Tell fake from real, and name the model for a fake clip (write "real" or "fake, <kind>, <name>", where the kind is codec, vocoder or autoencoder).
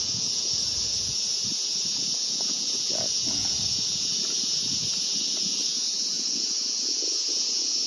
fake, vocoder, Vocos